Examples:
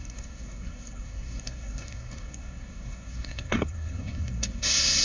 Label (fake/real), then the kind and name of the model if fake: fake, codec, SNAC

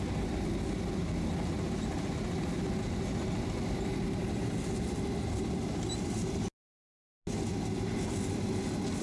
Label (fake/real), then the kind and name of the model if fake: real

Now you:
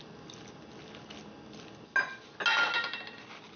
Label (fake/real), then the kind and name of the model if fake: real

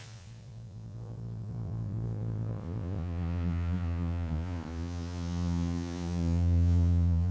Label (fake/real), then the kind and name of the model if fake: fake, vocoder, Vocos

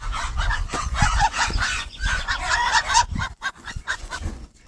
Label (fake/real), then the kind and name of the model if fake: fake, vocoder, Vocos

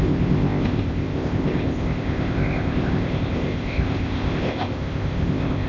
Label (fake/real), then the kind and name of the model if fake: fake, codec, ZipCodec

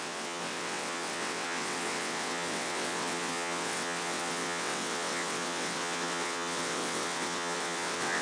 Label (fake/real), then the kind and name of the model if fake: fake, vocoder, WaveNeXt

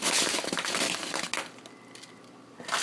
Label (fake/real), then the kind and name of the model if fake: real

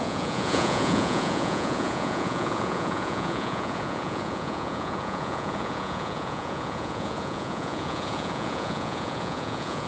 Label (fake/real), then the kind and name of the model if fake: fake, vocoder, Vocos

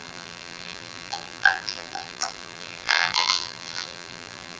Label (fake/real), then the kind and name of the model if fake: fake, vocoder, BigVGAN v2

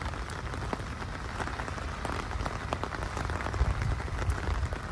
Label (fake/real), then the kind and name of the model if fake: real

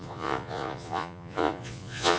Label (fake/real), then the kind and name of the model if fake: fake, vocoder, Vocos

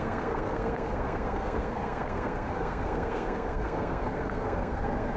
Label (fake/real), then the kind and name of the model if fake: fake, codec, SNAC